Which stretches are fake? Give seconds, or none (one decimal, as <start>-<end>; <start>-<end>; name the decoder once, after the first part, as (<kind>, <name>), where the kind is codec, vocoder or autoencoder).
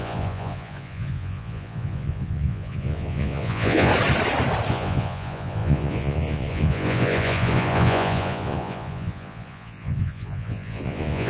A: 0.0-3.9 (vocoder, Vocos); 4.7-11.3